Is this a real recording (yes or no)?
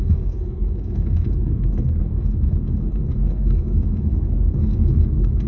no